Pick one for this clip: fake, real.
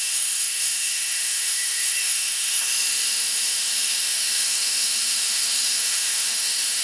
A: fake